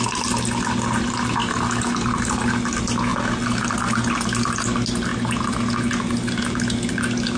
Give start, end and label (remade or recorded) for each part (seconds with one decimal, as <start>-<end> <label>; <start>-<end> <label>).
0.0-7.4 recorded